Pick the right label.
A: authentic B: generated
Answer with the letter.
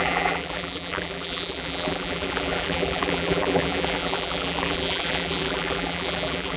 B